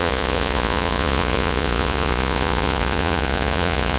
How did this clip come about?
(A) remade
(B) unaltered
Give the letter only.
A